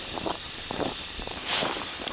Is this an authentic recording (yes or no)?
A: no